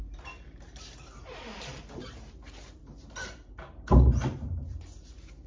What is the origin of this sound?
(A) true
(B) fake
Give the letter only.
B